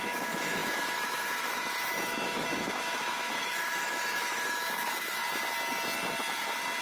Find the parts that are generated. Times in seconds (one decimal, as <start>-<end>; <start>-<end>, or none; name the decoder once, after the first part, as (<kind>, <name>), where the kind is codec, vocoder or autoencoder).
0.0-5.2 (autoencoder, DAC-VAE)